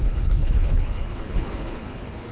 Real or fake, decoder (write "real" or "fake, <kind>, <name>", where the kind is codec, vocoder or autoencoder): fake, codec, HILCodec